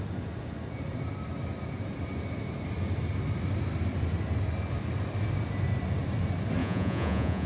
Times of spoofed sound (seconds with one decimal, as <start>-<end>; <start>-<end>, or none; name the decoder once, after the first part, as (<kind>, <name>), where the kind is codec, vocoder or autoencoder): 6.6-7.5 (vocoder, Vocos)